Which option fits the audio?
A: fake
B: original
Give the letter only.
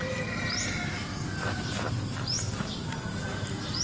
B